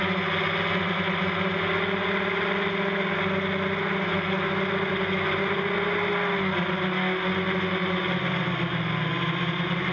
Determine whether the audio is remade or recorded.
recorded